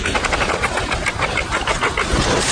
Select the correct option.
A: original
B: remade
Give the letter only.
A